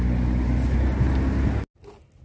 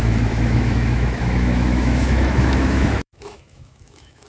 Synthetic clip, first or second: second